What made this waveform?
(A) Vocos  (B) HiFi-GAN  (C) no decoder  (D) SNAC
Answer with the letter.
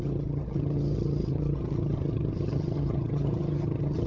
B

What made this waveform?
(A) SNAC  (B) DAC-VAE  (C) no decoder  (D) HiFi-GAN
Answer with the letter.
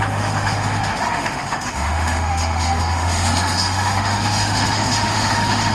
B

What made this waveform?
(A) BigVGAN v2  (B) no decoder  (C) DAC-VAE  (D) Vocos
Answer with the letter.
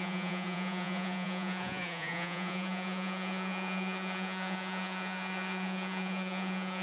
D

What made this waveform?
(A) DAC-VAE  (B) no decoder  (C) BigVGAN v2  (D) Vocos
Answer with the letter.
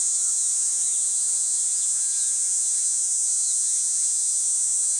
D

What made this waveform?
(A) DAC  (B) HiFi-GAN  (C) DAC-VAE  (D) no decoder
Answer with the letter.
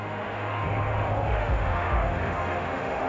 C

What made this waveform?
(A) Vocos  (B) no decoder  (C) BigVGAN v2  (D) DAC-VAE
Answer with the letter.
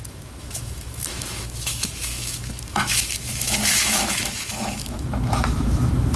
D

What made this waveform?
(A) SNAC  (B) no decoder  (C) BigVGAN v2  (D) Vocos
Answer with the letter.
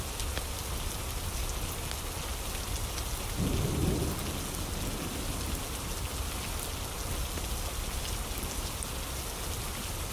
B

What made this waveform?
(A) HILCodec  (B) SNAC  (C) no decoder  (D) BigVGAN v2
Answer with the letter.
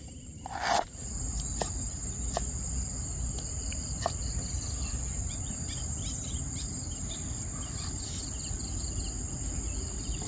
C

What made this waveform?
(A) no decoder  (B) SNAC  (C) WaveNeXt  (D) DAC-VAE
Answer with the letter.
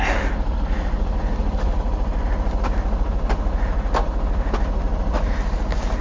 A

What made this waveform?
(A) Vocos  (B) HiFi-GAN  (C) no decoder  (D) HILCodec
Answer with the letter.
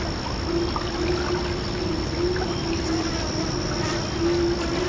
C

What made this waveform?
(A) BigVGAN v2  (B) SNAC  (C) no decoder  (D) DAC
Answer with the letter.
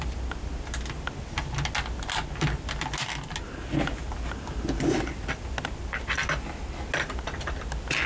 C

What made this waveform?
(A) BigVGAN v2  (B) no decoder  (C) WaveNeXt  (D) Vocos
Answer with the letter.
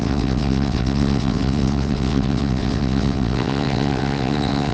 C